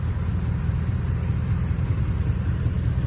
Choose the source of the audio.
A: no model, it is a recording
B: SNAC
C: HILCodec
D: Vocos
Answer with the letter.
A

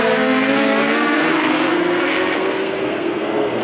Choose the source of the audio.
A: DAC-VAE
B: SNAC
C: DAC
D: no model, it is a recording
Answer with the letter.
B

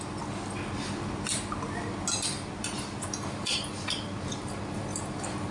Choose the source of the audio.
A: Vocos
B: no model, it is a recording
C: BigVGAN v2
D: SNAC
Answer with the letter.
B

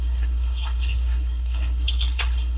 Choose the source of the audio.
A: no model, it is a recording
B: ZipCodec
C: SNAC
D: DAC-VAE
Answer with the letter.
C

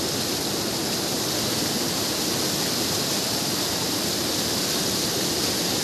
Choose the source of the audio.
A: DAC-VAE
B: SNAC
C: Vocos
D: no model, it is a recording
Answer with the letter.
D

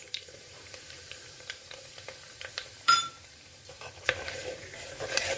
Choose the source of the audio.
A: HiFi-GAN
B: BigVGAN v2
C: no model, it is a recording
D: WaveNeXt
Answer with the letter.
B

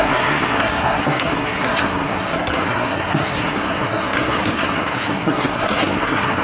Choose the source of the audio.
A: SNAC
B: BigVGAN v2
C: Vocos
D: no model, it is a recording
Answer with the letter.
A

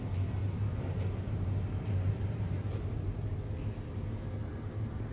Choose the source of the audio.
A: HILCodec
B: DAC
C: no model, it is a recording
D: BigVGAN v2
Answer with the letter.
C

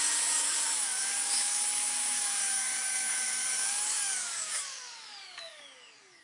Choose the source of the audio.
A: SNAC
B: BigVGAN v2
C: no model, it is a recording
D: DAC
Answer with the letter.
D